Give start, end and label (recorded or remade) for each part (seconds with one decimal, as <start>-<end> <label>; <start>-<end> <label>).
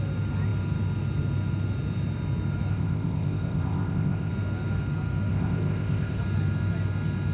0.0-2.7 recorded; 2.7-4.3 remade; 4.3-5.3 recorded; 5.3-6.2 remade; 6.2-7.3 recorded